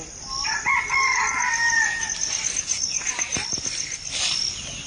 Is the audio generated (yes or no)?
no